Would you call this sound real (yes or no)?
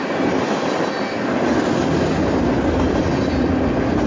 yes